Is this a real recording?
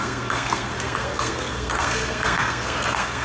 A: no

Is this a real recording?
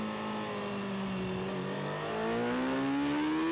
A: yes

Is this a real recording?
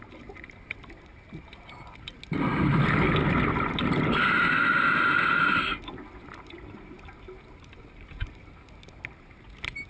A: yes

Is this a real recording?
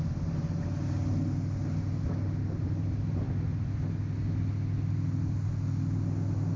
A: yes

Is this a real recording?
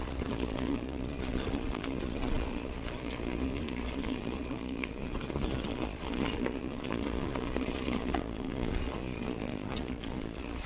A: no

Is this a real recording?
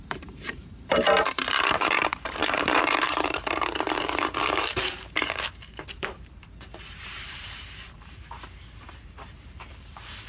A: no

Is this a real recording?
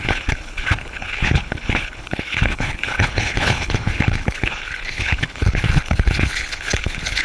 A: no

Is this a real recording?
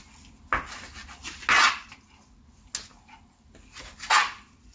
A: yes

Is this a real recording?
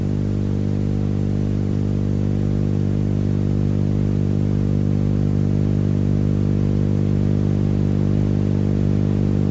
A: yes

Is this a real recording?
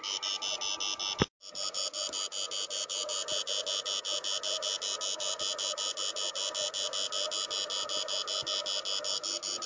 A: yes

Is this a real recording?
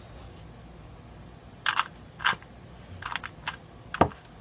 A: yes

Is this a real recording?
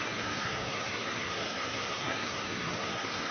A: no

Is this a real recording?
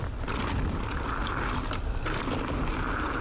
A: yes